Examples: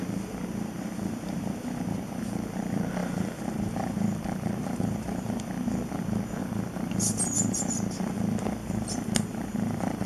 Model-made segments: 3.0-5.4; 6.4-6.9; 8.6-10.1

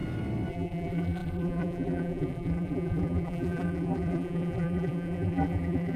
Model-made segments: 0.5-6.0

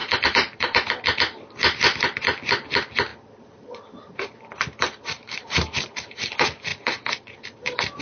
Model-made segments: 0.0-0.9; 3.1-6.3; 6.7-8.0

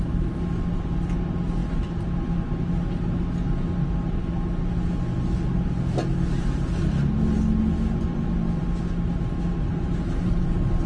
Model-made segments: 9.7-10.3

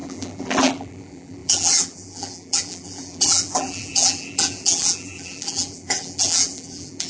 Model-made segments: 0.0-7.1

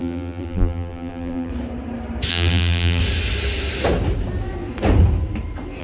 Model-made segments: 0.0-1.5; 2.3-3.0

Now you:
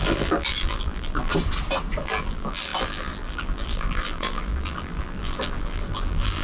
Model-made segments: 0.0-1.3; 2.0-6.4

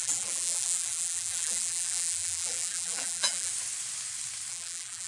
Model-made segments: 0.0-3.5; 4.5-5.1